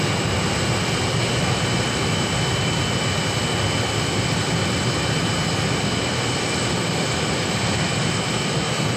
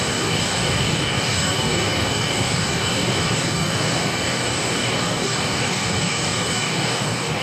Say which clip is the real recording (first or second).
first